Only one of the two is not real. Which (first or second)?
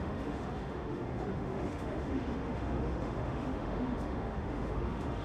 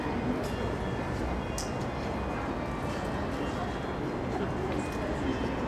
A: first